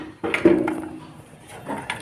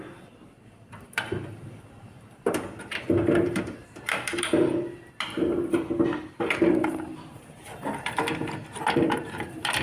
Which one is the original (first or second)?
first